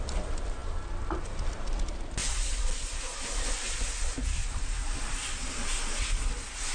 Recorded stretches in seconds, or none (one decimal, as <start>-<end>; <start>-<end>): 0.0-6.7